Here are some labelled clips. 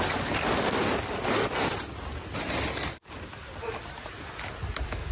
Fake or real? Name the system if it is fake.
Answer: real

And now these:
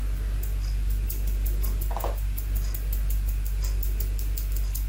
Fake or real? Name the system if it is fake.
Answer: real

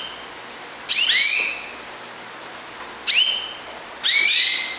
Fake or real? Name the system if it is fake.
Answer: real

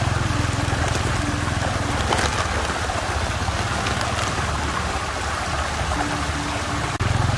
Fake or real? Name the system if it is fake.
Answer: real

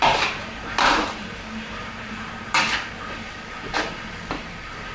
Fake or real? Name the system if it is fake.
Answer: fake, vocoder, BigVGAN v2